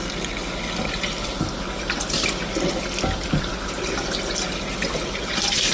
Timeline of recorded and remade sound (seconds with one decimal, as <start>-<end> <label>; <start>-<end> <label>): 0.0-5.7 recorded